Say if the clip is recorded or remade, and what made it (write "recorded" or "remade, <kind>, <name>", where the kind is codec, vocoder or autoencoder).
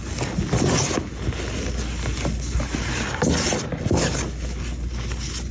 recorded